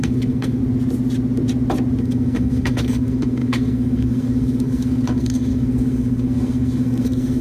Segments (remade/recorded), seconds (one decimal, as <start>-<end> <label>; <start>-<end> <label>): 0.0-0.6 remade; 0.6-2.0 recorded; 2.0-7.4 remade